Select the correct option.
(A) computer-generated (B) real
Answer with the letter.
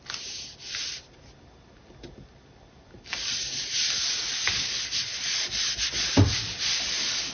B